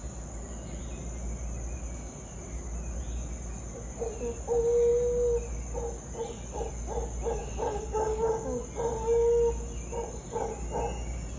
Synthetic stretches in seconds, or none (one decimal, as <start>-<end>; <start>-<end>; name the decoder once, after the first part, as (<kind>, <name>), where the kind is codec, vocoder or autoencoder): 7.4-8.3 (codec, DAC)